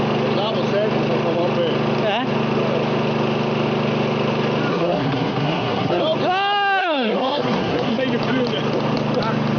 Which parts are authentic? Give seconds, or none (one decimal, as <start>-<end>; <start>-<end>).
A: 0.0-4.7; 6.0-6.8; 8.0-9.6